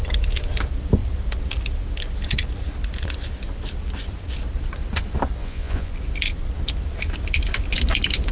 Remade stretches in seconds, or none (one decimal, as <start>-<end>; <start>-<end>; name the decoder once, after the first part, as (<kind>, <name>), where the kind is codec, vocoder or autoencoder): 5.4-5.9 (vocoder, Vocos)